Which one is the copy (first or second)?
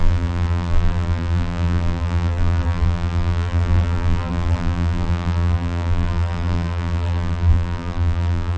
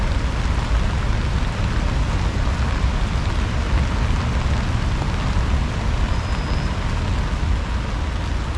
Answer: first